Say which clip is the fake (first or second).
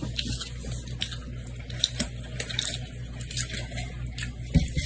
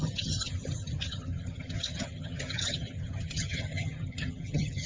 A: second